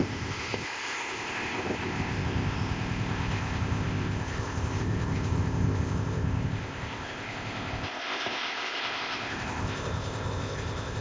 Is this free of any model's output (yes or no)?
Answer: no